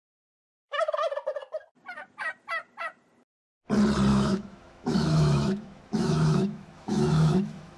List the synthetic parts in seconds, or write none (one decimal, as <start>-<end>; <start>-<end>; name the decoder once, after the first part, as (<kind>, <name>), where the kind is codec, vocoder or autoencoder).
0.0-0.8 (autoencoder, DAC-VAE); 4.1-7.8